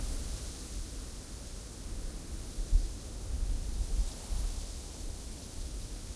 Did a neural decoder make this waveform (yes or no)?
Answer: no